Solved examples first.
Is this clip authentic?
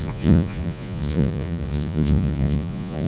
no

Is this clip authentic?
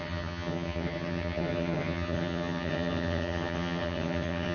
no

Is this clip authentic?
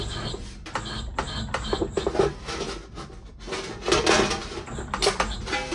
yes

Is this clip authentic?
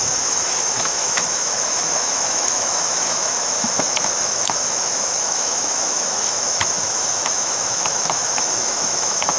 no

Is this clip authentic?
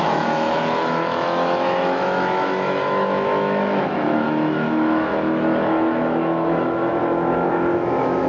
no